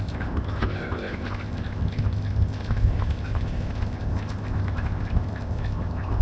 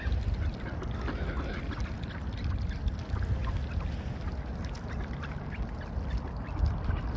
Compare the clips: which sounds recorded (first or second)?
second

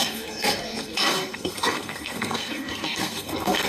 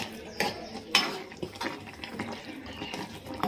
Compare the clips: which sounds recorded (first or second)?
second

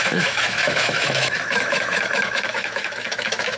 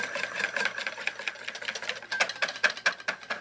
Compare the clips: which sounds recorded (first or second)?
second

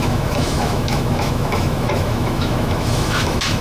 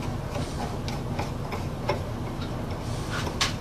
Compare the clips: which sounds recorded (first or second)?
second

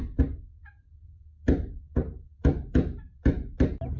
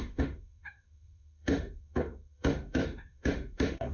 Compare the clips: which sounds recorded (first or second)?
first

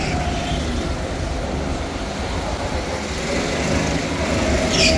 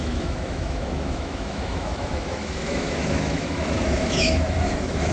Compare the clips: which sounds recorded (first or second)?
first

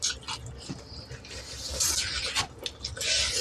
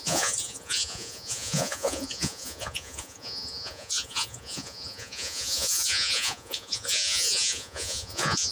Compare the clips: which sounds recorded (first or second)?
first